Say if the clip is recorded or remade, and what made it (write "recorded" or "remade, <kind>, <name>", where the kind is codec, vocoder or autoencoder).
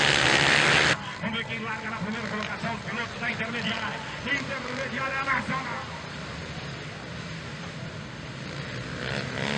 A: recorded